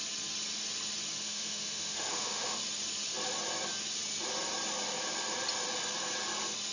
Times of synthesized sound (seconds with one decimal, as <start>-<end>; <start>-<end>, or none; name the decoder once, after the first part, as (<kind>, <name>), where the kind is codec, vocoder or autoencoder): 1.2-2.6 (autoencoder, DAC-VAE)

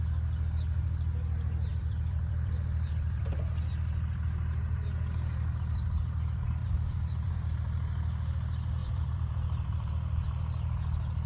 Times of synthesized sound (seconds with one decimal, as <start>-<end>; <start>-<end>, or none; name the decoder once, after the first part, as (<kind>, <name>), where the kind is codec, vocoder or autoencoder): 1.7-3.6 (vocoder, BigVGAN v2); 6.6-7.3; 8.8-9.9

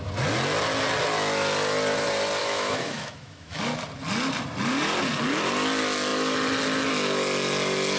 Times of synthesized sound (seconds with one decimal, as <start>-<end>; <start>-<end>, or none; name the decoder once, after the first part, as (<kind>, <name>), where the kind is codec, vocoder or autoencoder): 2.4-3.6 (autoencoder, DAC-VAE)

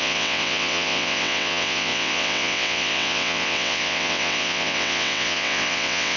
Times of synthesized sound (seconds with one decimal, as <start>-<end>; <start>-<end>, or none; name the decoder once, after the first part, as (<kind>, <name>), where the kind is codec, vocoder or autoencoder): 0.0-6.2 (vocoder, WaveNeXt)

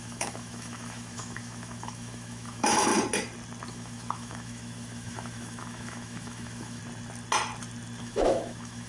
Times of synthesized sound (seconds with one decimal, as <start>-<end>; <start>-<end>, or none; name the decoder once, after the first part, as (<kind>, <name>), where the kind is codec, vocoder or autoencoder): 0.0-2.9 (autoencoder, DAC-VAE); 3.7-6.8; 8.0-8.9

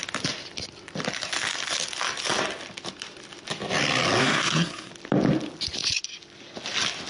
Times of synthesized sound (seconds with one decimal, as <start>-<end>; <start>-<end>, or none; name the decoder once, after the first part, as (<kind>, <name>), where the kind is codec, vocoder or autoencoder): 4.2-4.9 (codec, SNAC)

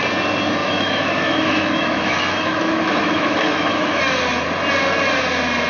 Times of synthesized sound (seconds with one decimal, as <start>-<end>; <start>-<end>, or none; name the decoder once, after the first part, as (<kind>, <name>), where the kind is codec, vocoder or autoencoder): 0.6-4.0 (autoencoder, DAC-VAE)

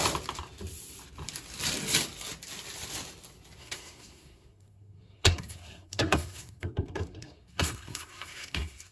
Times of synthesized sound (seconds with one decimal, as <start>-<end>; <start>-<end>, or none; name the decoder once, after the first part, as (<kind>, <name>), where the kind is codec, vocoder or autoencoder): 3.6-8.9 (codec, SNAC)